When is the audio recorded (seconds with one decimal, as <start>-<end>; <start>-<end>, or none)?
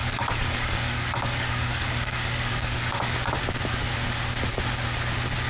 3.3-5.5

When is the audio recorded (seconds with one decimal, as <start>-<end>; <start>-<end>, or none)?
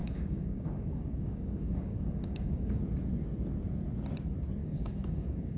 2.8-4.6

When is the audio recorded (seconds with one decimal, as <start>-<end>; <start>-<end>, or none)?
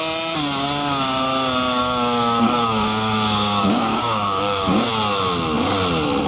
0.0-1.8; 4.9-6.3